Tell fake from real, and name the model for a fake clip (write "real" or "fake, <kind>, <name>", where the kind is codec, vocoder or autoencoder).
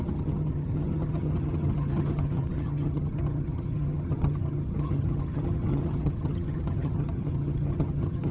fake, vocoder, HiFi-GAN